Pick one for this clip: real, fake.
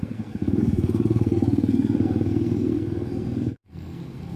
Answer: fake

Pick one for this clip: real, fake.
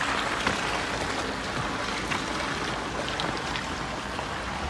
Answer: real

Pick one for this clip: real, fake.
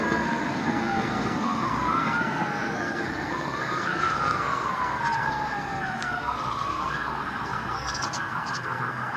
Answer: fake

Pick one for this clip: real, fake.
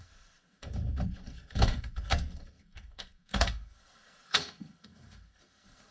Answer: fake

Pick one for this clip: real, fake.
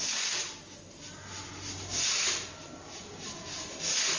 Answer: real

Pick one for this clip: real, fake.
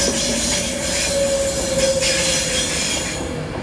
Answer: real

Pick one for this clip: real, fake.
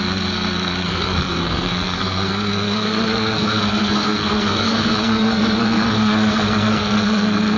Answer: fake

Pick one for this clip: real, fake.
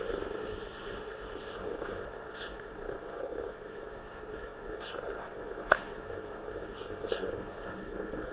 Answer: fake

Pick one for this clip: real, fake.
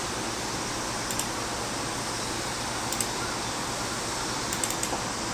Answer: real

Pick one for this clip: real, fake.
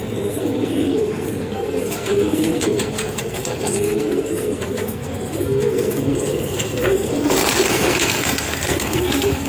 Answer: fake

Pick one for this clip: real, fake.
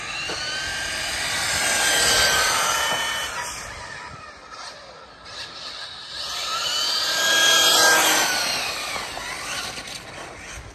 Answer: real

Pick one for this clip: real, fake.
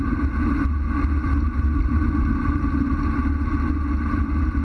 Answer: real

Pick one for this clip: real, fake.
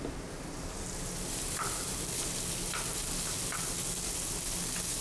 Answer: real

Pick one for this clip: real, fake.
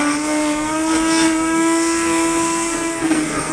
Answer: fake